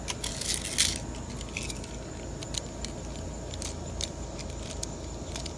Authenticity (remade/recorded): recorded